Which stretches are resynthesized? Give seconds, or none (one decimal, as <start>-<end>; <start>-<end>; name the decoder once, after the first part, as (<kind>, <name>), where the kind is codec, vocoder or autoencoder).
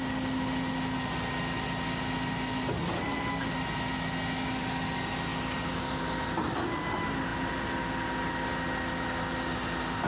none